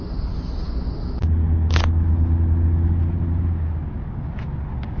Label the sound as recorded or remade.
recorded